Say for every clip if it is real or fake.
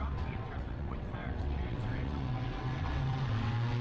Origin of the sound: fake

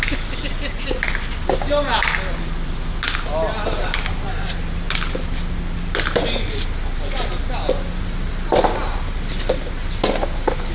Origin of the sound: real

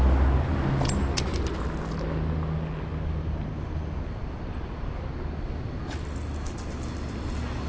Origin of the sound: real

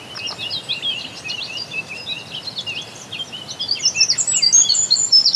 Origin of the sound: real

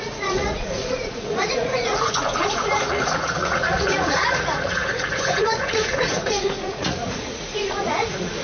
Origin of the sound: fake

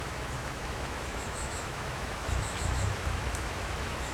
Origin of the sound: fake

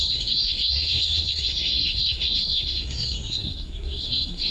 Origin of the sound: fake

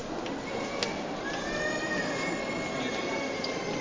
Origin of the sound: real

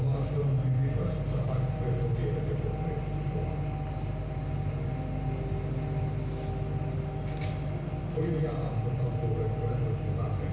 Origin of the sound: real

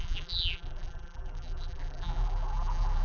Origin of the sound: fake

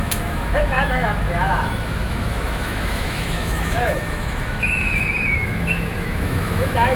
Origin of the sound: fake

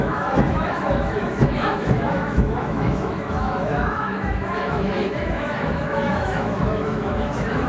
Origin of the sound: fake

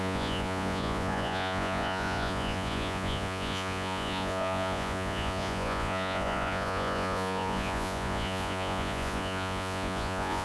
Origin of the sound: fake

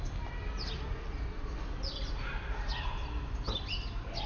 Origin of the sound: real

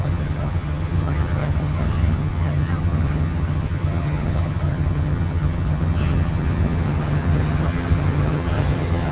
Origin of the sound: fake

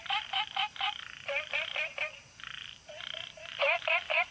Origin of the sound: fake